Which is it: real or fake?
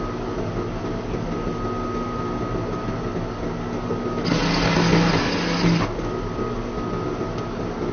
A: real